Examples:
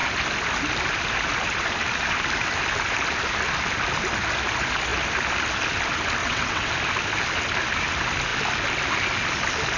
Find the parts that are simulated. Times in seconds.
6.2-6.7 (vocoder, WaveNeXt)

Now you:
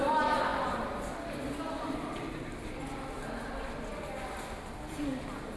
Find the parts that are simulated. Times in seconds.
none